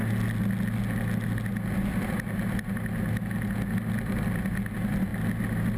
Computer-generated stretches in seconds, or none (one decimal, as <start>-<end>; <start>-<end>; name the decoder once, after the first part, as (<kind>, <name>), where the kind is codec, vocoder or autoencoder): none